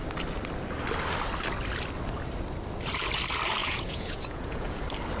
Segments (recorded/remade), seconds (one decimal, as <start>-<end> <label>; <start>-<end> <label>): 0.0-3.6 recorded; 3.6-4.8 remade; 4.8-5.2 recorded